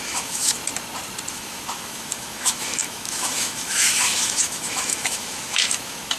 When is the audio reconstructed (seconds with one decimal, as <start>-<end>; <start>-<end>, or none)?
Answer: 0.0-0.6; 1.3-6.2